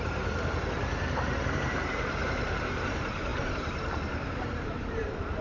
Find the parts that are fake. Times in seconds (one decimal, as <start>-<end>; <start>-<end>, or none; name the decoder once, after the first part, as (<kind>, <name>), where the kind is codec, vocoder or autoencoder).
0.0-5.4 (vocoder, BigVGAN v2)